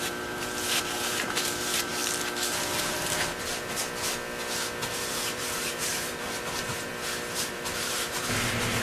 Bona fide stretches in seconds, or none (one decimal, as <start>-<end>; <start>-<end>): 2.0-2.8; 3.8-4.9; 6.9-7.5